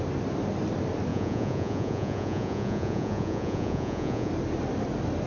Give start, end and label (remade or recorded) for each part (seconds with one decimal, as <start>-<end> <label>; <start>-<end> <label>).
0.0-1.1 recorded; 1.1-4.3 remade; 4.3-5.3 recorded